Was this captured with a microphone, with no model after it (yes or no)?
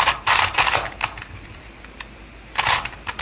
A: no